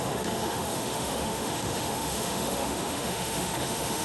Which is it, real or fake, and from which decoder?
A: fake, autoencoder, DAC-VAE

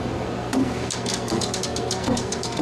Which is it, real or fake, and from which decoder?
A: fake, codec, SNAC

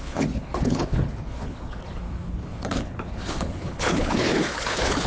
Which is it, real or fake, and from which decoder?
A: fake, codec, HILCodec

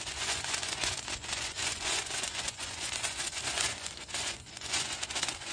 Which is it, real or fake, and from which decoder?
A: fake, vocoder, Vocos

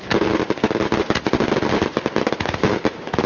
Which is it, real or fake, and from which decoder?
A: real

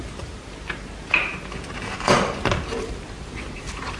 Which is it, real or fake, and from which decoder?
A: fake, vocoder, BigVGAN v2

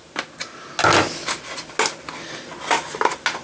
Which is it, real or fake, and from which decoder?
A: real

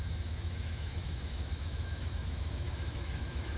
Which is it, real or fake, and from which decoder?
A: fake, autoencoder, DAC-VAE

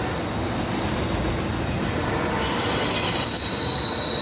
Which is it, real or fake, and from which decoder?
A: real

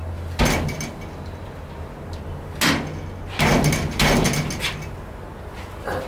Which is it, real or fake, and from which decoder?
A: real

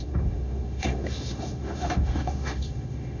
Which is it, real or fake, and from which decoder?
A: fake, autoencoder, DAC-VAE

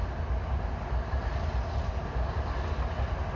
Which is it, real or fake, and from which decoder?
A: real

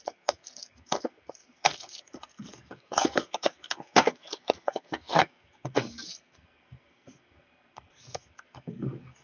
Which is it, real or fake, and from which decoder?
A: fake, codec, SNAC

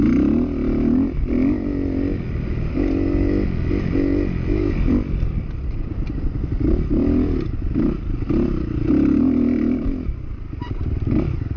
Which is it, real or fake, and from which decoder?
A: real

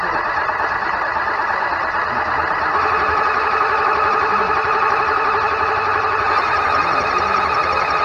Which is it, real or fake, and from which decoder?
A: real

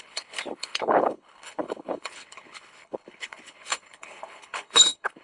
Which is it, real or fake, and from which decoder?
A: fake, codec, HILCodec